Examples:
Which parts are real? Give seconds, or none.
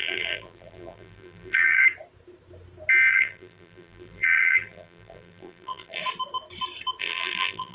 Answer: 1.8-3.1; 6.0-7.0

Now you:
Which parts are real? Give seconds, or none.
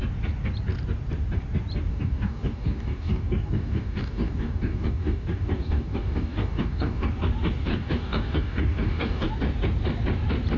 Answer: 0.0-1.9; 7.1-7.7; 9.3-10.6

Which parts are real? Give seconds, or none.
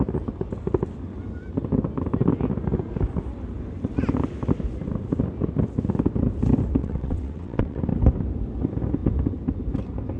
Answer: 0.0-6.8; 7.8-10.2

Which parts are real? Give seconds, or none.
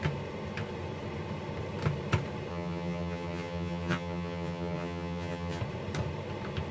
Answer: 0.0-2.5; 5.6-6.7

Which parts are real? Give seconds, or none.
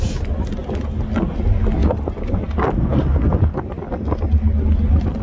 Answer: 0.0-5.2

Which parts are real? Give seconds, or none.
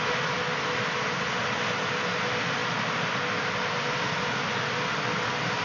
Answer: 0.0-5.6